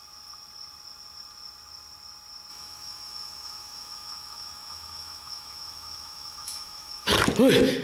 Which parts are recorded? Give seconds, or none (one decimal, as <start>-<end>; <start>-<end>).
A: 0.0-2.5; 7.1-7.8